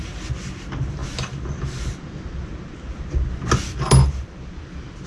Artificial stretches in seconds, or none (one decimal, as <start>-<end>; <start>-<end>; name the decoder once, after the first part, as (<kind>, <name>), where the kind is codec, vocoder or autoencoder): none